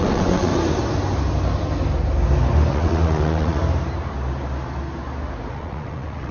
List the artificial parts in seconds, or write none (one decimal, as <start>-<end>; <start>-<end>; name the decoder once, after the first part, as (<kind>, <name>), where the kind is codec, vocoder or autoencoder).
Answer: 0.0-0.5 (vocoder, WaveNeXt); 2.7-3.6; 5.5-6.3